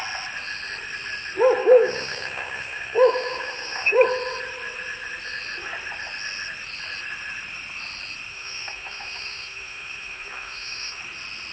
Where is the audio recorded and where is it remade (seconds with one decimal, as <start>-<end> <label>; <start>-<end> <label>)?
0.0-1.6 recorded; 1.6-4.0 remade; 4.0-8.3 recorded; 8.3-11.0 remade; 11.0-11.5 recorded